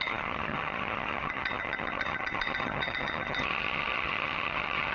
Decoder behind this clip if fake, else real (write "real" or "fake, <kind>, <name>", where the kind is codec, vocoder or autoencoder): fake, vocoder, HiFi-GAN